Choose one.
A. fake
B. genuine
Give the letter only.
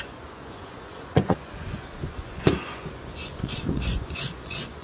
A